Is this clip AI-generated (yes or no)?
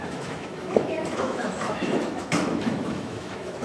yes